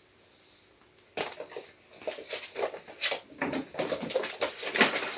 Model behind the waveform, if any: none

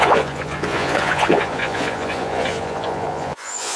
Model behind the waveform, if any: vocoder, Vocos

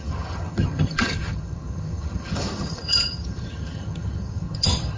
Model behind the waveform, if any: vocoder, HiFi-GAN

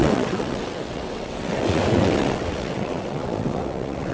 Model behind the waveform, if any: vocoder, WaveNeXt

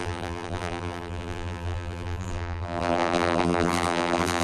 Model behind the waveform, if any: vocoder, BigVGAN v2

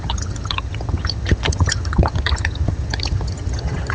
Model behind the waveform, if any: vocoder, HiFi-GAN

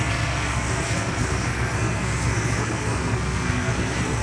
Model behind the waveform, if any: codec, SNAC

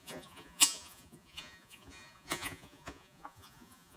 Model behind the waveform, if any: vocoder, Vocos